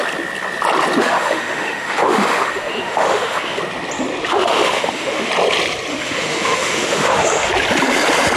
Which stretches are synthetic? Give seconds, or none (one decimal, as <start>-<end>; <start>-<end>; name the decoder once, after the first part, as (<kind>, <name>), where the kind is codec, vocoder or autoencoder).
1.0-3.6 (autoencoder, DAC-VAE); 4.3-5.3; 5.9-7.5